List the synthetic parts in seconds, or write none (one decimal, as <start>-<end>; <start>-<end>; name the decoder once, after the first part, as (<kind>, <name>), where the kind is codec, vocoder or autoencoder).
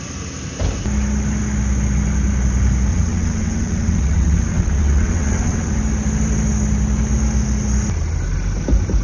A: 2.9-5.7 (vocoder, WaveNeXt)